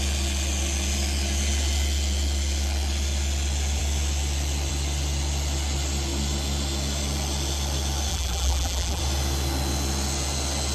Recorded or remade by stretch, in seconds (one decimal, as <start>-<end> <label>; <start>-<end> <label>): 0.0-8.1 recorded; 8.1-9.0 remade; 9.0-10.7 recorded